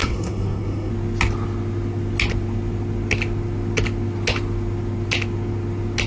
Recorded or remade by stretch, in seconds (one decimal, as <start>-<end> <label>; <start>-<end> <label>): 0.0-0.9 remade; 0.9-6.1 recorded

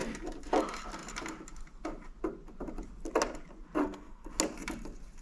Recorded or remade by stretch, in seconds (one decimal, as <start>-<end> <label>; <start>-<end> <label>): 0.0-3.8 recorded; 3.8-4.3 remade; 4.3-5.2 recorded

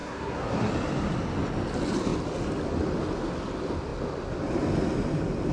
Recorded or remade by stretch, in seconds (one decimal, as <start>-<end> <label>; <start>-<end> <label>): 0.0-0.7 remade; 0.7-5.5 recorded

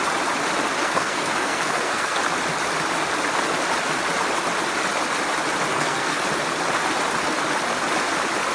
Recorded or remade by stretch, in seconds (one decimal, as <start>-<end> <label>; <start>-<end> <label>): 0.0-0.8 recorded; 0.8-2.2 remade; 2.2-5.7 recorded; 5.7-6.2 remade; 6.2-8.5 recorded